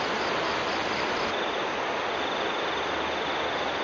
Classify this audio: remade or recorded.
recorded